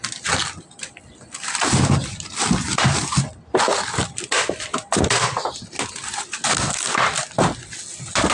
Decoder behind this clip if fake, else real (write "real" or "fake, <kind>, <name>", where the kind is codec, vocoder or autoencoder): real